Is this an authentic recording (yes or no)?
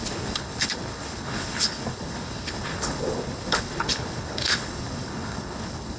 no